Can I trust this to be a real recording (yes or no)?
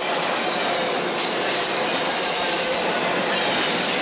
yes